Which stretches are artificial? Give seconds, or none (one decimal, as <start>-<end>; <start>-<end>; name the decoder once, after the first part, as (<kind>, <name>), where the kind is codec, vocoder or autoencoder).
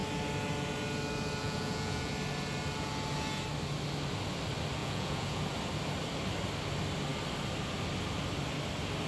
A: 1.4-2.1 (vocoder, Vocos); 4.8-5.4